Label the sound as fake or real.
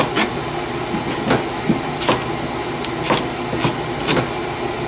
real